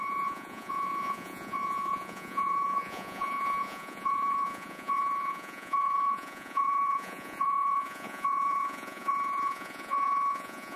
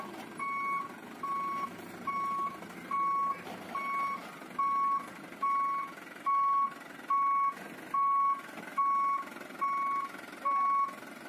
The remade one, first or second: first